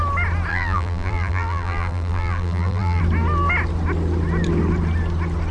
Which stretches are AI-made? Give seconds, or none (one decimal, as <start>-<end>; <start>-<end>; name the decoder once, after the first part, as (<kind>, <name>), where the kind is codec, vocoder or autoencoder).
0.5-3.0 (vocoder, BigVGAN v2)